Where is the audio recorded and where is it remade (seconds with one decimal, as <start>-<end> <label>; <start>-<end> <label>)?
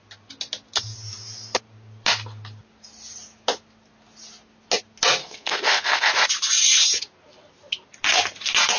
0.0-5.2 recorded; 5.2-6.1 remade; 6.1-8.8 recorded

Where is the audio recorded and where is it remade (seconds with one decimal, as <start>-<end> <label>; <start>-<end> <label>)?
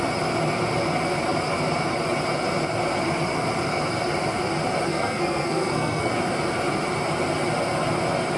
0.0-4.9 recorded; 4.9-6.1 remade; 6.1-8.4 recorded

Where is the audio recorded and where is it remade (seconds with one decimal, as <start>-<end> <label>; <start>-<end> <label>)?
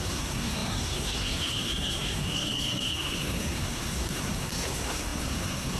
0.0-5.8 remade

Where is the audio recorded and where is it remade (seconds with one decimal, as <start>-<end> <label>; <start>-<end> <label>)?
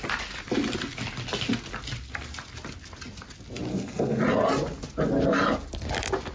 0.0-3.7 recorded; 3.7-4.2 remade; 4.2-6.3 recorded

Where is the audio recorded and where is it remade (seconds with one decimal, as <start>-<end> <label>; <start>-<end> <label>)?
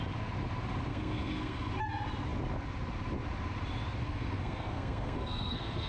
0.0-0.9 recorded; 0.9-1.7 remade; 1.7-4.0 recorded; 4.0-5.9 remade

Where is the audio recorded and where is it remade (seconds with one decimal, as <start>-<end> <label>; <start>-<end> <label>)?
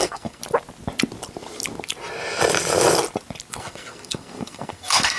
0.0-0.4 remade; 0.4-3.5 recorded; 3.5-5.2 remade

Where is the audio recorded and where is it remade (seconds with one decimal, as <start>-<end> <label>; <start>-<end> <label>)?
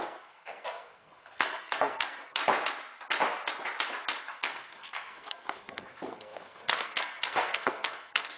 0.0-2.4 remade; 2.4-4.2 recorded; 4.2-8.4 remade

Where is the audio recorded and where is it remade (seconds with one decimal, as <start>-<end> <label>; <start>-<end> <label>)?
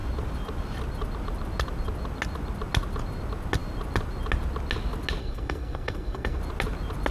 0.0-5.2 recorded; 5.2-6.4 remade; 6.4-7.1 recorded